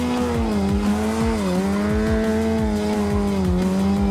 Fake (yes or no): no